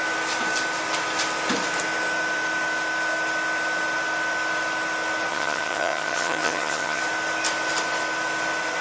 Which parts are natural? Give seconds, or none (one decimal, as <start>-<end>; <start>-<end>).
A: 0.0-5.3; 7.0-8.8